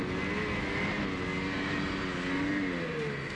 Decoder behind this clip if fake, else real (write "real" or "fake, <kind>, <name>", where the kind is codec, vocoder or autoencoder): real